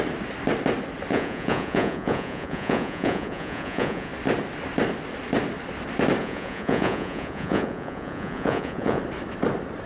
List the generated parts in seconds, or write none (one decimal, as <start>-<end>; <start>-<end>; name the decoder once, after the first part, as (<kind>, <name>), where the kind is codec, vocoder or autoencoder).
1.1-4.1 (vocoder, Vocos); 6.2-9.0